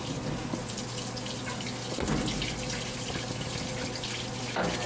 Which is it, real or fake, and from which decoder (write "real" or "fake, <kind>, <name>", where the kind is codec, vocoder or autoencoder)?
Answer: real